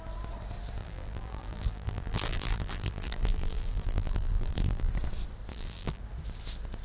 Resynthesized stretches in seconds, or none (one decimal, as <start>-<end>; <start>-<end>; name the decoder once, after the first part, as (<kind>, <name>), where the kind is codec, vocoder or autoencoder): 0.8-4.9 (vocoder, BigVGAN v2); 5.5-6.0